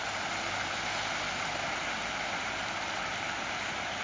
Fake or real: real